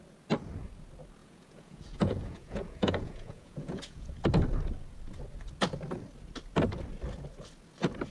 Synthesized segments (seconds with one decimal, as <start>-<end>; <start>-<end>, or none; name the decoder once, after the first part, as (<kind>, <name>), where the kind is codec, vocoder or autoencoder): 1.2-4.1 (vocoder, Vocos)